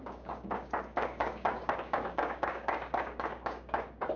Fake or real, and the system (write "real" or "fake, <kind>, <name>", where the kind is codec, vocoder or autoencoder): fake, codec, DAC